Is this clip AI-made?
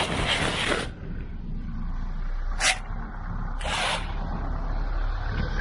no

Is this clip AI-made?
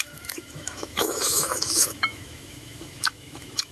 yes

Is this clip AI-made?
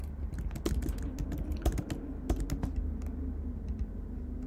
no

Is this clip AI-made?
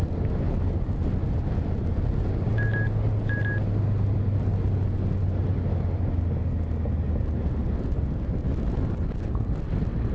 no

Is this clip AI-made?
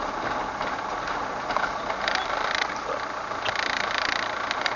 no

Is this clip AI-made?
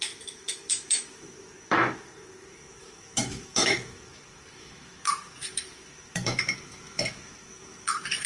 yes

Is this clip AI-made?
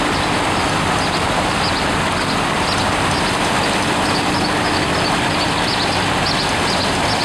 no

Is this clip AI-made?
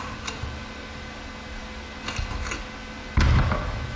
no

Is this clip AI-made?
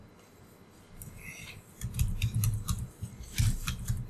no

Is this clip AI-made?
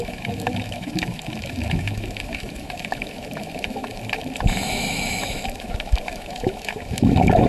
yes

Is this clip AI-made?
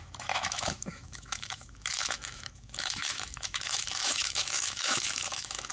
yes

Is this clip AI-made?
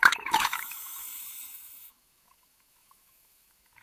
yes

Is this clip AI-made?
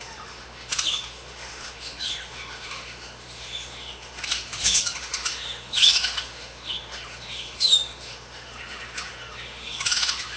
yes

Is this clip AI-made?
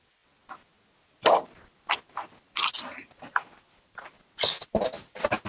no